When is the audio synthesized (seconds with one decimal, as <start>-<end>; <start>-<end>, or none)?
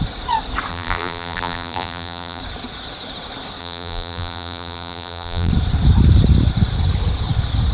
0.7-2.4; 3.6-5.5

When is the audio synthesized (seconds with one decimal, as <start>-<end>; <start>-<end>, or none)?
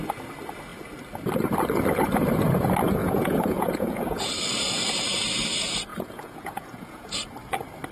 3.0-4.3; 5.9-7.1